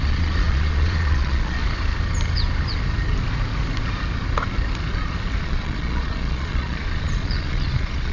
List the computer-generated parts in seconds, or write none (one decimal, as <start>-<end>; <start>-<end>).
0.0-1.6; 5.4-8.1